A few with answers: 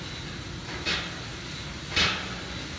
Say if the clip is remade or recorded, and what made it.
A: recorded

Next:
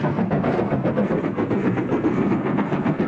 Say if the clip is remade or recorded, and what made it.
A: remade, codec, SNAC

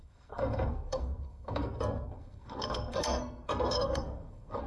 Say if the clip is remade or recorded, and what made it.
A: remade, codec, SNAC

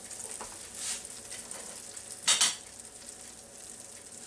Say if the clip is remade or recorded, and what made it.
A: recorded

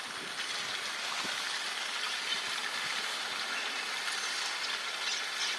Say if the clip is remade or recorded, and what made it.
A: recorded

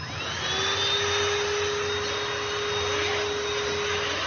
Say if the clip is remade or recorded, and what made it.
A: recorded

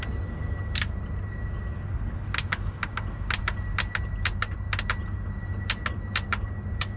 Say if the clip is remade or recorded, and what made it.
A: recorded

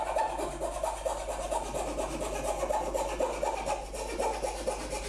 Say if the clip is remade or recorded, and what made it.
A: recorded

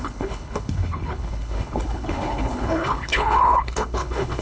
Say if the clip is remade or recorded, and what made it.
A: remade, codec, HILCodec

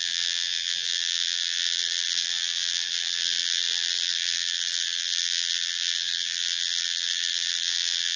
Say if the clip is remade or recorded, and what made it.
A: remade, vocoder, BigVGAN v2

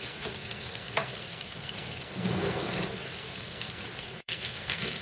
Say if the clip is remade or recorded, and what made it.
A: remade, codec, SNAC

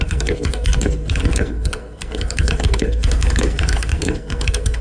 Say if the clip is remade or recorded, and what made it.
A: remade, codec, SNAC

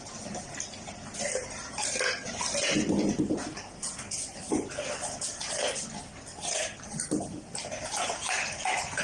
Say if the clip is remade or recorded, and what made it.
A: remade, vocoder, BigVGAN v2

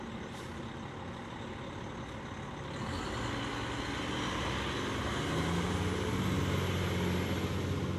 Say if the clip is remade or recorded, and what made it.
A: recorded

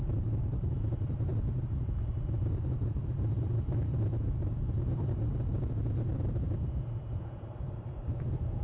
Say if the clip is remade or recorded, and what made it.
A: remade, vocoder, BigVGAN v2